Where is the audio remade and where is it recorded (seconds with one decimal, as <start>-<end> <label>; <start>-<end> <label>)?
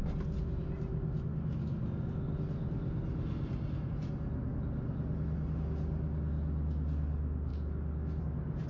0.0-8.7 recorded